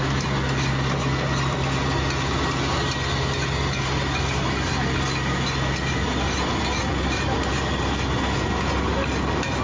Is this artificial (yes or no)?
no